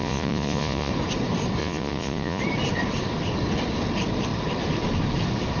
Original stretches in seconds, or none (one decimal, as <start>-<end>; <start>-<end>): 0.9-1.6; 2.4-5.6